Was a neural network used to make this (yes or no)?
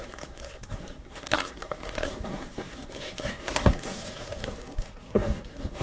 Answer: yes